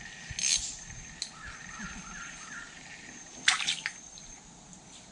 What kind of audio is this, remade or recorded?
recorded